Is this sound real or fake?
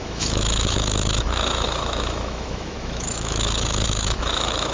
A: fake